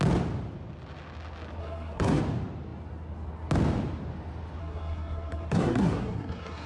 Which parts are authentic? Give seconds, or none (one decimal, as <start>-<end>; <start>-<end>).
0.0-1.6; 2.2-4.6